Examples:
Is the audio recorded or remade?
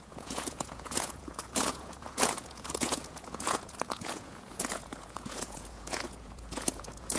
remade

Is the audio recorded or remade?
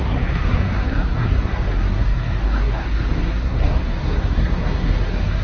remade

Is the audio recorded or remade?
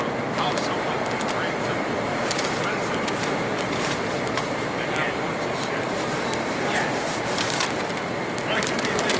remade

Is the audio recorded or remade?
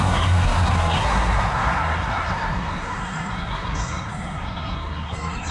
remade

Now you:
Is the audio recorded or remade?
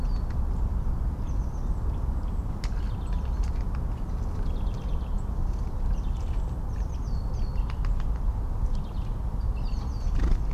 recorded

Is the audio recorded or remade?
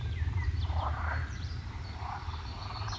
remade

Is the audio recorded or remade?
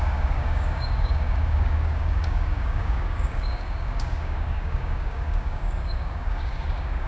remade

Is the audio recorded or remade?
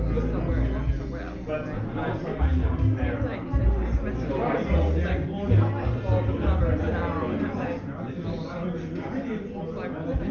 recorded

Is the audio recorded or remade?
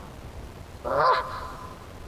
recorded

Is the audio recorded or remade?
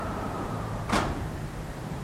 remade